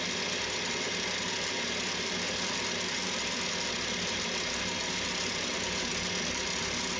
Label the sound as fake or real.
real